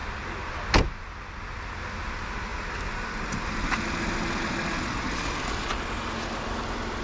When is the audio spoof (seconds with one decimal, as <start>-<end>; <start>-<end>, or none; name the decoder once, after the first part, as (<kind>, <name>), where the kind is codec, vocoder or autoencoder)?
none